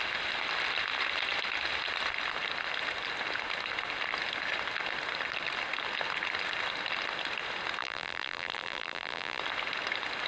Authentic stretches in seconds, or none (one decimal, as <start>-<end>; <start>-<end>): 0.0-7.8; 9.4-10.3